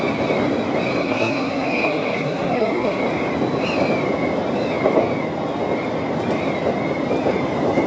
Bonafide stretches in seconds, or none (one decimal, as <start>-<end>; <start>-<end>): 0.0-1.0; 3.0-7.9